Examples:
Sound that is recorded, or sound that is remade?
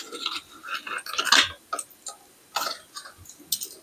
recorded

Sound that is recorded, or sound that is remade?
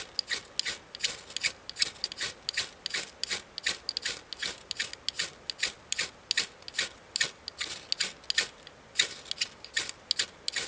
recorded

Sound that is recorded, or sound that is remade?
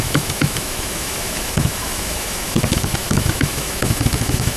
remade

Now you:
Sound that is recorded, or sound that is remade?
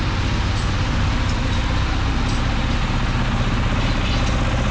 recorded